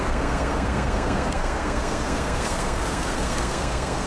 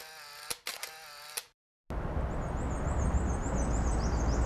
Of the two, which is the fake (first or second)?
first